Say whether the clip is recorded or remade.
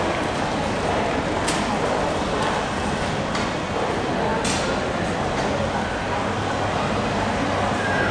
recorded